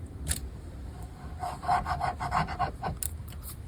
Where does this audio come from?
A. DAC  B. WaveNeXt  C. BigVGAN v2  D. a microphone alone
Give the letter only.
D